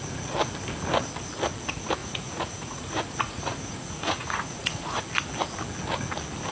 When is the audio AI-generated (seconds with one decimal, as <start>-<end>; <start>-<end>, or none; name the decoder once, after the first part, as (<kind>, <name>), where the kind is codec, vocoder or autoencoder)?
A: 2.0-5.0 (vocoder, Vocos)